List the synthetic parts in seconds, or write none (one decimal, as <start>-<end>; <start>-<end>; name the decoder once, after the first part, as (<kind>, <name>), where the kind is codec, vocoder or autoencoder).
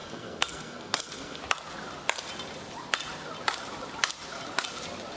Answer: 0.0-1.4 (codec, SNAC)